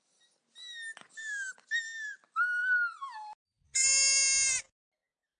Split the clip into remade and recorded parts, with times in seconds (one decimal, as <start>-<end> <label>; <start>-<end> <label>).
0.0-5.4 recorded